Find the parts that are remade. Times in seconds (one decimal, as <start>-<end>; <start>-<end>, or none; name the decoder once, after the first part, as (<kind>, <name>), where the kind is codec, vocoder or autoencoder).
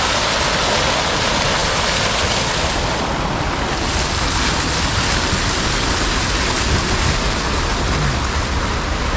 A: none